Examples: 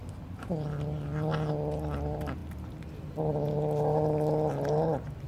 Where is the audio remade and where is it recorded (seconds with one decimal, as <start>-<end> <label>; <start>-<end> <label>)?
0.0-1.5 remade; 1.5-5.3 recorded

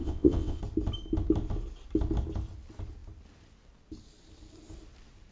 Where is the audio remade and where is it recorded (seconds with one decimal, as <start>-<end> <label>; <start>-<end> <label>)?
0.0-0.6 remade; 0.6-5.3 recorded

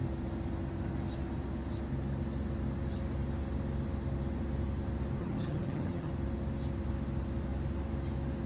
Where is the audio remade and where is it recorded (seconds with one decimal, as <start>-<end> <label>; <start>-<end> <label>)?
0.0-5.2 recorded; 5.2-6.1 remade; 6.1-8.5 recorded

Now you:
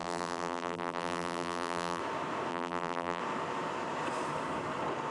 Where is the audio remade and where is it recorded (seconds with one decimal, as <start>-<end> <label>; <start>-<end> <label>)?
0.0-2.0 remade; 2.0-2.5 recorded; 2.5-3.2 remade; 3.2-5.1 recorded